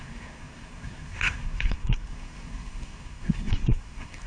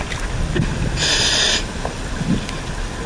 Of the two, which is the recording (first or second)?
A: second